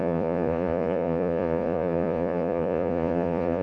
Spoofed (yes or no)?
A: yes